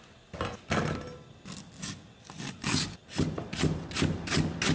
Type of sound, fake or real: real